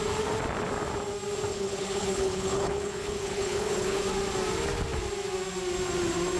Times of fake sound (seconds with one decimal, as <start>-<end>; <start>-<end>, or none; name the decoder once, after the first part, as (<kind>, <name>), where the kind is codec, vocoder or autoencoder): 1.5-4.0 (codec, HILCodec)